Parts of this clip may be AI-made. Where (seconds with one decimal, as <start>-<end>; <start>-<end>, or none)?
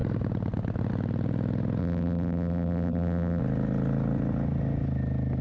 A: 1.8-3.4